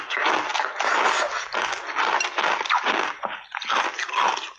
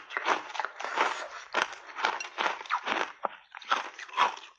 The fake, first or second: second